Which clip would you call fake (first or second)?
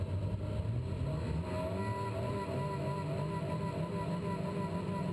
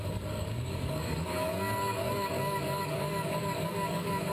second